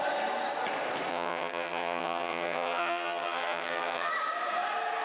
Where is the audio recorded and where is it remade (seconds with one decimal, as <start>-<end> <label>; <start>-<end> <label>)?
0.0-1.1 recorded; 1.1-4.1 remade; 4.1-5.0 recorded